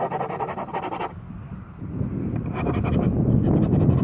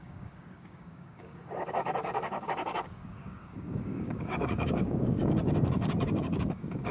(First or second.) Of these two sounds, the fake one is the second